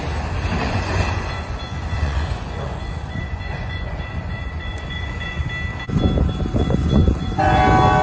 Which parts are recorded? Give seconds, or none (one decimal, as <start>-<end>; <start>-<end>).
0.0-0.6; 5.4-6.6; 7.6-8.0